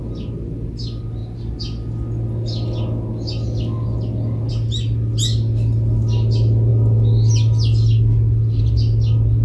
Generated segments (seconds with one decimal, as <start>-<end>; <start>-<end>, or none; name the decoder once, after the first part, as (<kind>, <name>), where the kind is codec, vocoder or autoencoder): none